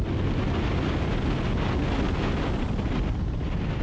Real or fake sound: real